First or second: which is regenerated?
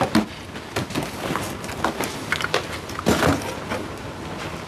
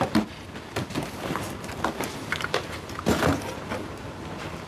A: second